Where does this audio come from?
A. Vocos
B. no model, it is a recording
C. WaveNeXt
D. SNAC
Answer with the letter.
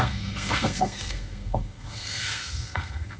D